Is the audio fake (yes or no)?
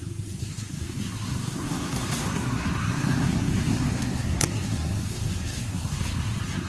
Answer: yes